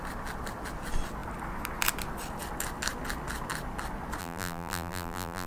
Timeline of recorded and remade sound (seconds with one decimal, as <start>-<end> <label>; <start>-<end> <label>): 0.0-4.2 recorded; 4.2-5.5 remade